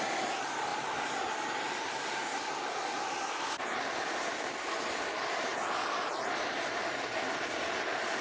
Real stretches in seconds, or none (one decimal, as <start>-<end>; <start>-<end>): 0.0-8.2